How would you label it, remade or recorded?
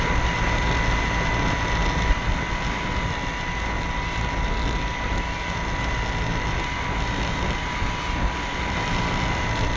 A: recorded